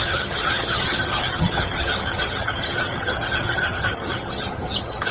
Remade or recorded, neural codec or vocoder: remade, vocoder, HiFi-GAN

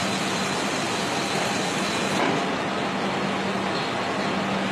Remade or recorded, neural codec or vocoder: recorded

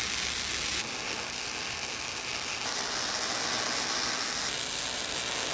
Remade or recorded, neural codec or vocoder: recorded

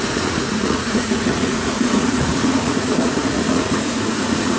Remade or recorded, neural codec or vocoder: remade, vocoder, Vocos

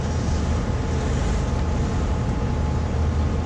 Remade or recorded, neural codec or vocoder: recorded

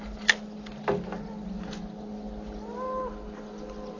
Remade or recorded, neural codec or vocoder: recorded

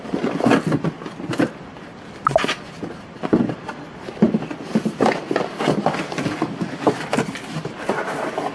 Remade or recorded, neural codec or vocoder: recorded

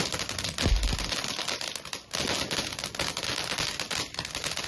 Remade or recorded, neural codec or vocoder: recorded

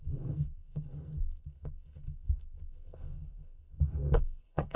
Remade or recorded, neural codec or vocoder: remade, codec, SNAC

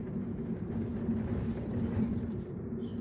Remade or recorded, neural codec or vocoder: remade, vocoder, BigVGAN v2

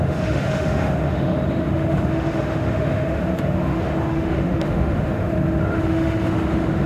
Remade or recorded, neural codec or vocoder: remade, autoencoder, DAC-VAE